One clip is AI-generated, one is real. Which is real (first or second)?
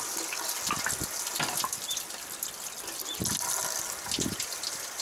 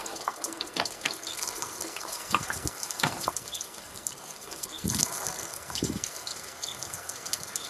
first